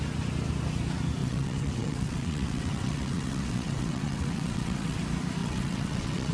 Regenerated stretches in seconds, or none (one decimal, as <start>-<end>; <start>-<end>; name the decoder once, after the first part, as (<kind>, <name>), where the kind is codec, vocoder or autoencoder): 1.2-5.0 (vocoder, WaveNeXt); 5.4-6.3